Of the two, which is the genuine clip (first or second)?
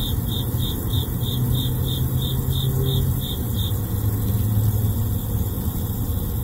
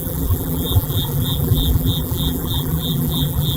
first